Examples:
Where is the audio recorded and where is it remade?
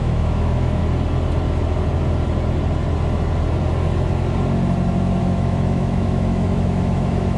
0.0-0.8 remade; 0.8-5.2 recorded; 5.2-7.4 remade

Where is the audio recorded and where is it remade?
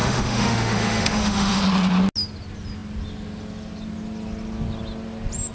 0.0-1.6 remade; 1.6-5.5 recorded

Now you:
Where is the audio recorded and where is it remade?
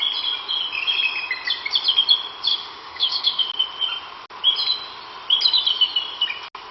0.0-2.5 recorded; 2.5-3.5 remade; 3.5-6.7 recorded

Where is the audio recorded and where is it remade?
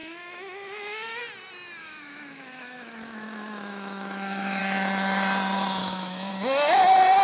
0.0-1.2 remade; 1.2-1.8 recorded; 1.8-4.6 remade; 4.6-5.8 recorded; 5.8-6.3 remade; 6.3-7.2 recorded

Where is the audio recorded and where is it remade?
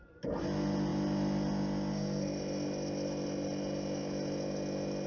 0.0-5.1 recorded